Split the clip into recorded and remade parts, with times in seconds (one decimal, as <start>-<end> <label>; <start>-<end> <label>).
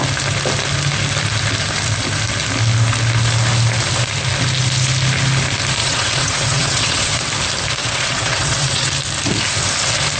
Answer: 0.0-5.8 recorded; 5.8-7.3 remade; 7.3-7.8 recorded; 7.8-8.9 remade; 8.9-10.2 recorded